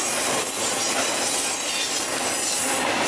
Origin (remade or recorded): recorded